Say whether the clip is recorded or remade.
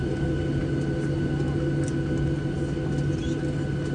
recorded